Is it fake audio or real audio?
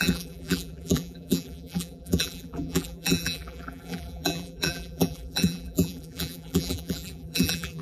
fake